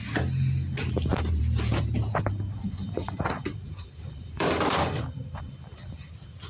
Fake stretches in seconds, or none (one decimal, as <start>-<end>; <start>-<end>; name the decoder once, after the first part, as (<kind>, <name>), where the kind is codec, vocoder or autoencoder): 1.1-2.0 (vocoder, BigVGAN v2); 3.0-5.4